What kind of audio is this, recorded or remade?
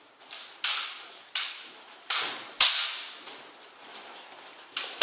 remade